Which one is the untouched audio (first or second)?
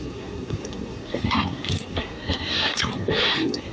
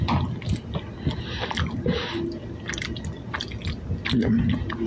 second